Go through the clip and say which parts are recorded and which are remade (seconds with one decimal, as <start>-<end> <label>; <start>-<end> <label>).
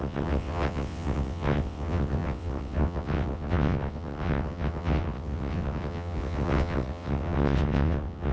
0.0-8.3 remade